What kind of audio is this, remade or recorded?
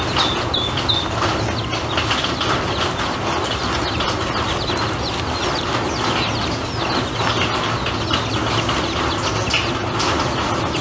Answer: recorded